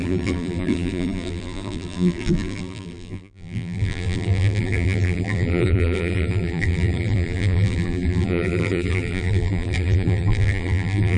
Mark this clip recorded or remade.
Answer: remade